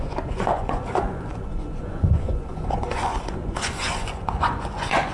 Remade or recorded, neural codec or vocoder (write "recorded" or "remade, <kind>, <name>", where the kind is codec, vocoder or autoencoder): remade, vocoder, Vocos